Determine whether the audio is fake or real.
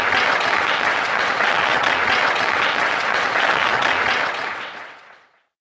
fake